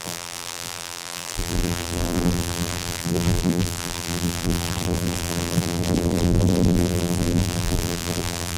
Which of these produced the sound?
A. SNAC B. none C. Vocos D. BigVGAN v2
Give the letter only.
D